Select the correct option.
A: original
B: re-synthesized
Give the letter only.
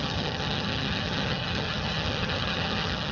B